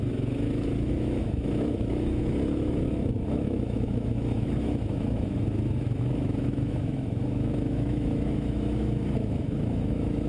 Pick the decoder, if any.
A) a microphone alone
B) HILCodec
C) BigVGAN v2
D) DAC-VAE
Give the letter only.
D